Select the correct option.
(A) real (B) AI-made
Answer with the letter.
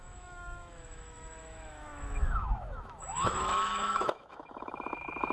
B